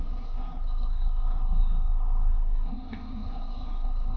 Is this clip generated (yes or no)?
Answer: yes